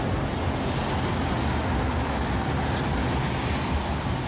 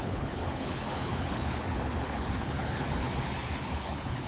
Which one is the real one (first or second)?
first